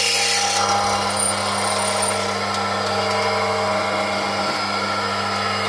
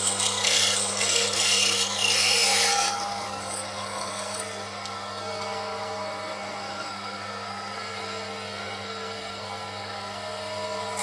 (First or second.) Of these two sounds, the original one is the first